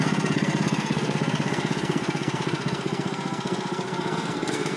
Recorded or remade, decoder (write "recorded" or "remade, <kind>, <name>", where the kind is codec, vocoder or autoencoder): remade, codec, SNAC